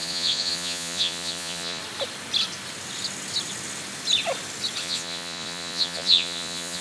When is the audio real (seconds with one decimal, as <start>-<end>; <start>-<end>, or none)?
1.8-4.8